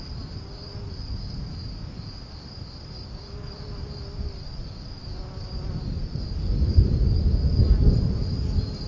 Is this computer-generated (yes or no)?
no